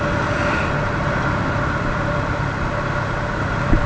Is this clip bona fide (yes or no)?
yes